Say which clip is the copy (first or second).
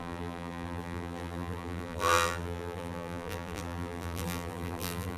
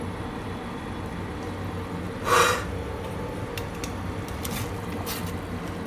first